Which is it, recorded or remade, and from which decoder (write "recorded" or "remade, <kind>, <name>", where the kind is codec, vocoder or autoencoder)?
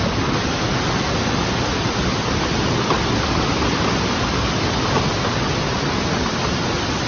recorded